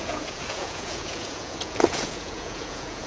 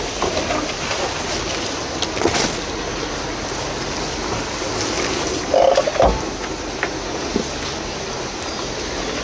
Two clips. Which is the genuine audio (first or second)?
second